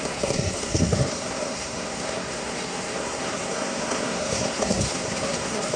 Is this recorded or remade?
remade